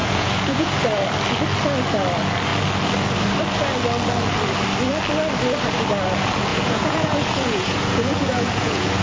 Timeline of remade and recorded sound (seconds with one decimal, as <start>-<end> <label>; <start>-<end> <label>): 0.0-0.7 remade; 0.7-6.5 recorded; 6.5-9.0 remade